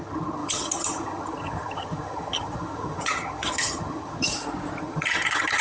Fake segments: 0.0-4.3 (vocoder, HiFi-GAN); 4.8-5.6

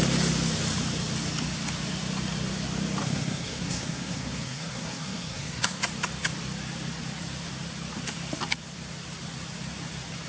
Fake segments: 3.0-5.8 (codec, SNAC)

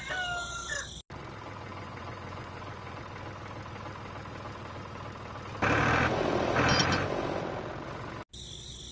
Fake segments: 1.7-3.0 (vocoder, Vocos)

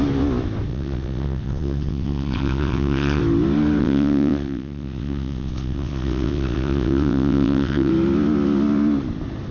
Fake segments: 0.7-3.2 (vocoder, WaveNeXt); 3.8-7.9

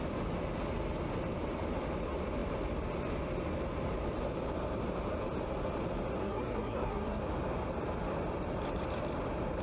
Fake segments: 6.2-7.2 (codec, SNAC)